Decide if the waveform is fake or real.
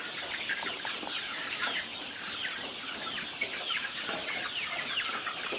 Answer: real